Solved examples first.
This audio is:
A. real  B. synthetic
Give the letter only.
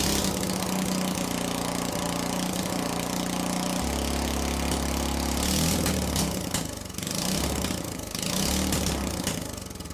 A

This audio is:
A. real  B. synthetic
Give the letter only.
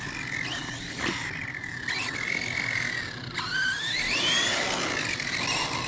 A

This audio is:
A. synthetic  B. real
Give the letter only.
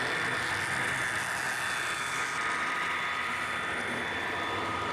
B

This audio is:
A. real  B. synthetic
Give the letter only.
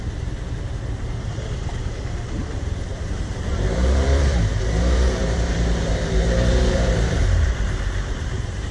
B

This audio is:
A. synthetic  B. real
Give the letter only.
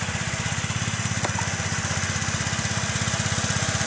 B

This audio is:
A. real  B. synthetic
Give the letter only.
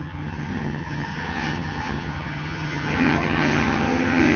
B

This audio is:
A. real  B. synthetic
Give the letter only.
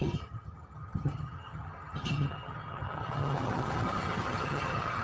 B